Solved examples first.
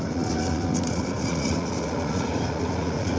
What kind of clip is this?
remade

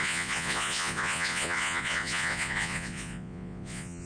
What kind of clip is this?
remade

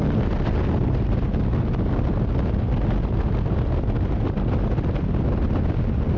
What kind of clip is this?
recorded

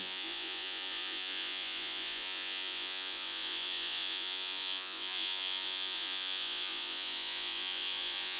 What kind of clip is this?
remade